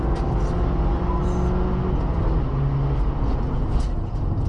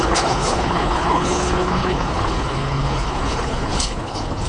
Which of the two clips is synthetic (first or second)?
second